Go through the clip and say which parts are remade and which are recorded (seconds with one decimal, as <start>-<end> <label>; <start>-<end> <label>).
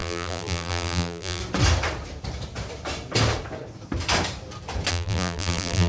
0.0-1.4 remade; 1.4-4.9 recorded; 4.9-5.9 remade